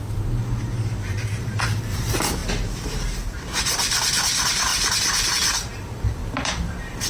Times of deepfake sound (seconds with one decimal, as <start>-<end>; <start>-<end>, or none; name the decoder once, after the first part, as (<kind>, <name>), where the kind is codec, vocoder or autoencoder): 0.0-2.4 (vocoder, BigVGAN v2); 3.1-7.1